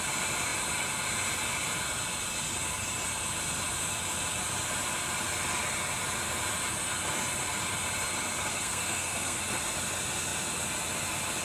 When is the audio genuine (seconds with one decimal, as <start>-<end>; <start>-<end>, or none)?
0.0-8.5; 9.4-11.4